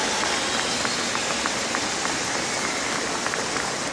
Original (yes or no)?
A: yes